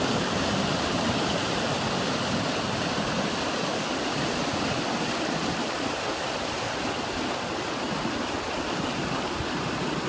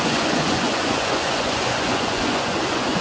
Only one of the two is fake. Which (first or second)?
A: second